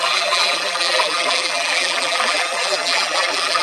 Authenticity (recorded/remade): remade